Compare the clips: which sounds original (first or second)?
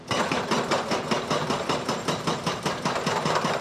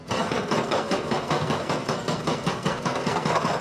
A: first